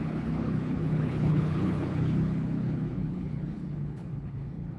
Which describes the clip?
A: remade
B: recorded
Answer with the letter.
A